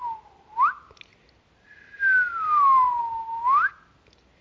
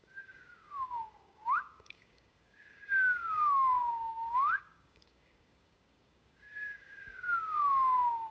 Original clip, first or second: first